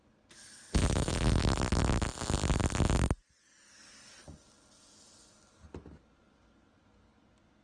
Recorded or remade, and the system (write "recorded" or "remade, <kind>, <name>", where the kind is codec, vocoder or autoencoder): recorded